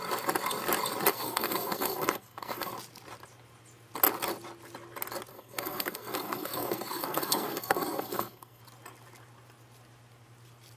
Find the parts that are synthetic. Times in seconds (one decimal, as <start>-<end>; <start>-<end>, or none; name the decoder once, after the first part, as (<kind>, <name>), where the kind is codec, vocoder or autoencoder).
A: 1.1-2.7 (codec, SNAC); 5.3-8.6

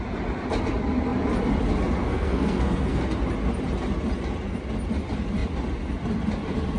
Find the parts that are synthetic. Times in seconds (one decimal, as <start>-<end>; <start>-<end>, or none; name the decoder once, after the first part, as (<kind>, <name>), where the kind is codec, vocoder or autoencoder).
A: 2.0-3.0 (codec, SNAC)

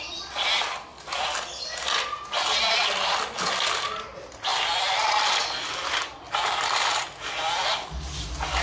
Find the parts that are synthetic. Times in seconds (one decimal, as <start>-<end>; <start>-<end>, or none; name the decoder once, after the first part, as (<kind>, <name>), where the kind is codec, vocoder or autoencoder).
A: none

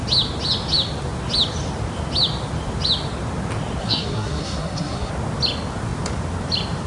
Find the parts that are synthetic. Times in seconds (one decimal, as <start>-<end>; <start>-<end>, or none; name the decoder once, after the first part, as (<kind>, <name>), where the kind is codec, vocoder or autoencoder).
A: 3.8-5.1 (codec, SNAC)

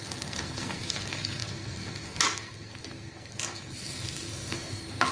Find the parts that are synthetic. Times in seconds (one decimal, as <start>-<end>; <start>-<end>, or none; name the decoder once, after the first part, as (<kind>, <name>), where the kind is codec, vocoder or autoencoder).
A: 0.0-5.1 (codec, SNAC)

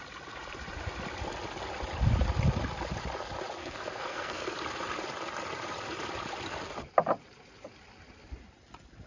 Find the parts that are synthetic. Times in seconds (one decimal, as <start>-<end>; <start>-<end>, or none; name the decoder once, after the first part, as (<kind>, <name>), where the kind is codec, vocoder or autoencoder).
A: 3.6-4.5 (codec, SNAC)